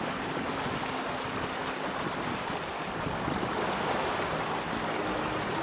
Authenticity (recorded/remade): recorded